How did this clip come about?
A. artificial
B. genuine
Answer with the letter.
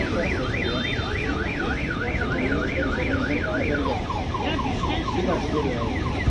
B